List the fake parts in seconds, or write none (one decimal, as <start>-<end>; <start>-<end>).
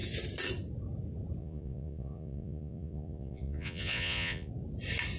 1.4-4.5